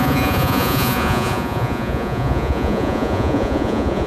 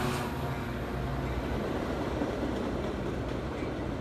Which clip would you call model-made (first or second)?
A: first